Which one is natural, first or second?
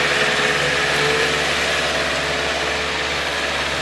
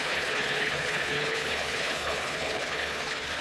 first